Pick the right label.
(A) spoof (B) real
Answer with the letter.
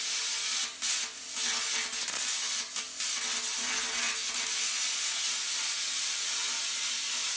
B